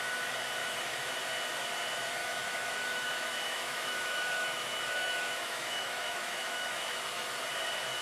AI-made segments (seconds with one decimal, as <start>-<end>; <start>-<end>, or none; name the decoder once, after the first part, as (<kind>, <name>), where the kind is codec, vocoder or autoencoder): 0.6-1.1 (autoencoder, DAC-VAE); 2.2-7.0